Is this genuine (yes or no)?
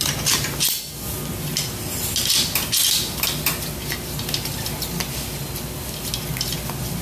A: yes